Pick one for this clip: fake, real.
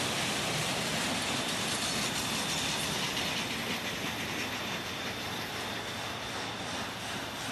real